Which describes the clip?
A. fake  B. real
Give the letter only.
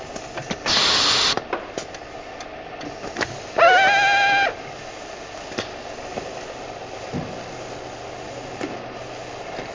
B